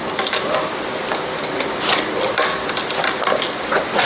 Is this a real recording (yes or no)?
yes